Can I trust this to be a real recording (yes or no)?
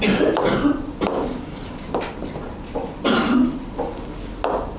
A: yes